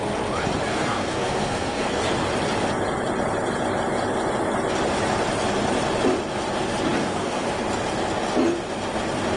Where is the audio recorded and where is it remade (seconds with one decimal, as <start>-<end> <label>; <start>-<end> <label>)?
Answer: 0.0-0.7 recorded; 0.7-2.0 remade; 2.0-7.0 recorded; 7.0-7.5 remade; 7.5-9.4 recorded